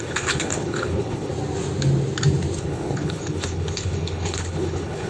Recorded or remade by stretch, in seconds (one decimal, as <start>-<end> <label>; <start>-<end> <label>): 0.0-1.3 remade; 1.3-2.6 recorded; 2.6-5.1 remade

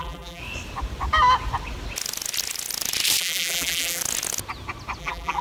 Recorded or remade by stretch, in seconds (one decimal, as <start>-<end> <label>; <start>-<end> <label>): 0.0-0.4 remade; 0.4-3.2 recorded; 3.2-4.0 remade; 4.0-5.0 recorded; 5.0-5.4 remade

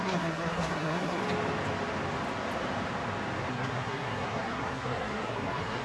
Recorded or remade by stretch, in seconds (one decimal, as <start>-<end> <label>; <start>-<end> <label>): 0.0-1.2 remade; 1.2-3.5 recorded; 3.5-5.8 remade

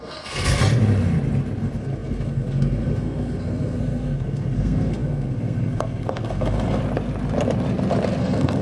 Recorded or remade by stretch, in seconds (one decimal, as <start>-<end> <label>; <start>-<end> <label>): 0.0-0.6 remade; 0.6-1.6 recorded; 1.6-6.8 remade; 6.8-8.2 recorded; 8.2-8.6 remade